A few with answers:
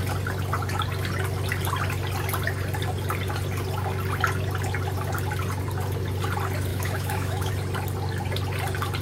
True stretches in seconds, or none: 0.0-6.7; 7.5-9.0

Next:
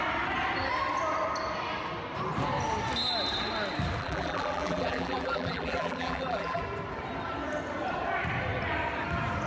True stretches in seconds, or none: 0.0-4.0; 6.6-9.5

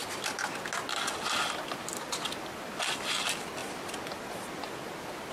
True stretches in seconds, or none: 0.0-5.3

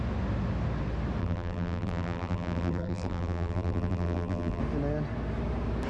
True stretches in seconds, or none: 0.0-1.2; 4.6-5.9